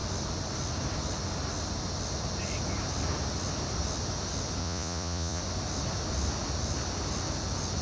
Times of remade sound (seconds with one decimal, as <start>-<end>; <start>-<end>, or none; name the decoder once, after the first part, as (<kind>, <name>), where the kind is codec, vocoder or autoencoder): 4.6-5.4 (vocoder, Vocos)